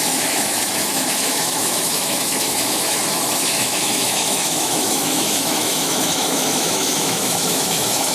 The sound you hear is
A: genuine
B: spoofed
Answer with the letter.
B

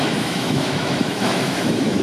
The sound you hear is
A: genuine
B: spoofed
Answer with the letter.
B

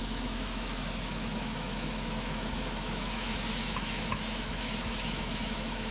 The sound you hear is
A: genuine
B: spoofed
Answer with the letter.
B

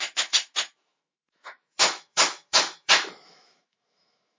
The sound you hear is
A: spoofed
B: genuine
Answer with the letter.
A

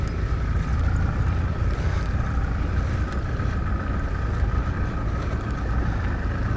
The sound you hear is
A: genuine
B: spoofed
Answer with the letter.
A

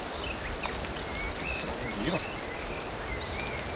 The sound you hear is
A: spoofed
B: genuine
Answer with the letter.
B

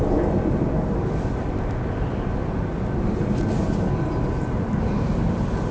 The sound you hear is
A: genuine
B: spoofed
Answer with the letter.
A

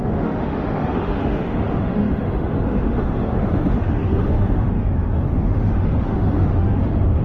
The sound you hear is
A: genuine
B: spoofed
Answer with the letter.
B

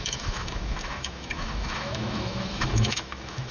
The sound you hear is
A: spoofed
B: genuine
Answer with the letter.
A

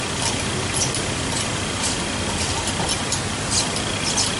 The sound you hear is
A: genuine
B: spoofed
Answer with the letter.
A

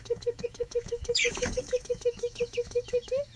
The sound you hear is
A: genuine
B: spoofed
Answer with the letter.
B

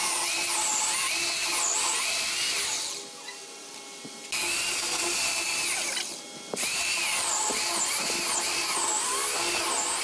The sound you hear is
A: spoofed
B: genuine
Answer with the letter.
B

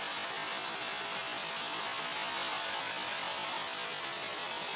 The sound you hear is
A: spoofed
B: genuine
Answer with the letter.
B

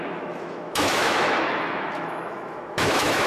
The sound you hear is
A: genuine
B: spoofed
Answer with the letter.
B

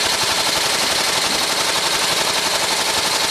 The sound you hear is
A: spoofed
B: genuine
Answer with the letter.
B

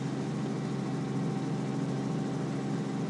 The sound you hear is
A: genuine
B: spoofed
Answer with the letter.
A